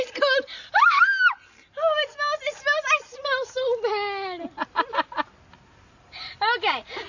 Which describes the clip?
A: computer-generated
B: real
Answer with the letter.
B